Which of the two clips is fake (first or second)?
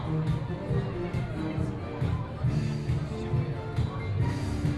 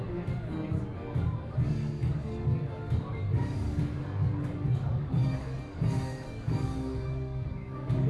second